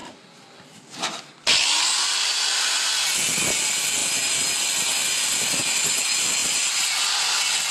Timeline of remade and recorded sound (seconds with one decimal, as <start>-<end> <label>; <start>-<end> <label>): 0.0-6.4 recorded; 6.4-7.0 remade; 7.0-7.7 recorded